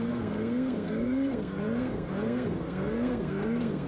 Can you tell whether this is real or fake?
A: fake